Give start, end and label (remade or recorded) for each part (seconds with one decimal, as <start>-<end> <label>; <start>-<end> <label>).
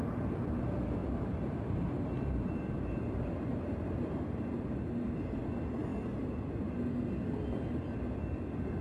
0.0-1.0 recorded; 1.0-5.4 remade; 5.4-8.8 recorded